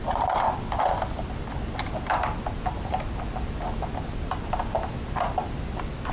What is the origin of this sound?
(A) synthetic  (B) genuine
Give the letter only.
B